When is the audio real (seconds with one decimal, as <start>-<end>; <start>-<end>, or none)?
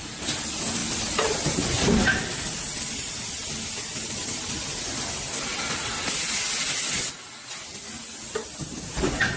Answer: 0.0-9.4